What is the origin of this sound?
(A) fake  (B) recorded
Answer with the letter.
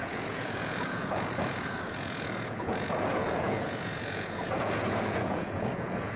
A